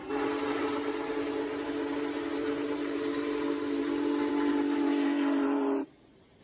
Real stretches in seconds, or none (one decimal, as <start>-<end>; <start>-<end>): 0.0-6.4